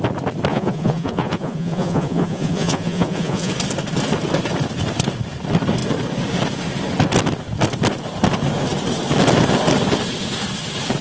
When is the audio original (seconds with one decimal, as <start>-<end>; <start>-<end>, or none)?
0.0-0.5; 3.5-11.0